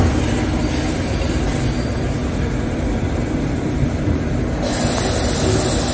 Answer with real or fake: real